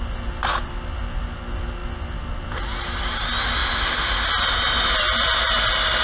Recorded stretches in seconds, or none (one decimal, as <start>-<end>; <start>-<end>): 0.0-6.0